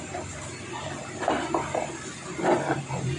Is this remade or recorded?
recorded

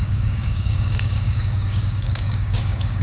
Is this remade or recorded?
remade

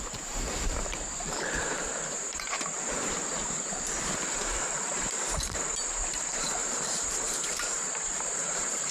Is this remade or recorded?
remade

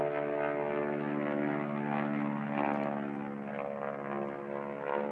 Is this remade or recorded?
recorded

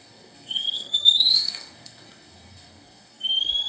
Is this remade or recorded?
remade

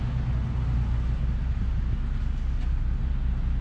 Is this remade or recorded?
recorded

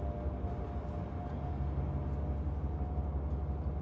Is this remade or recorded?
recorded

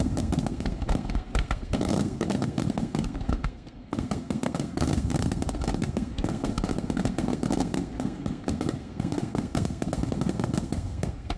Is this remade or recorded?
remade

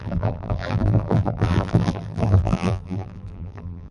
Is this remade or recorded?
remade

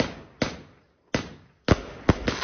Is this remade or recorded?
recorded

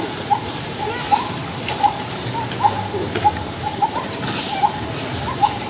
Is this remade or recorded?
recorded